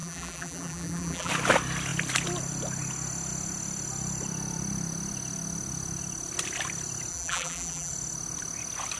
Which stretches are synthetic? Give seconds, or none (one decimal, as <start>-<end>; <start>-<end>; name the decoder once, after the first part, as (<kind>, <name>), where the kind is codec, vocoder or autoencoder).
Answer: 0.0-1.3 (vocoder, BigVGAN v2); 7.1-7.9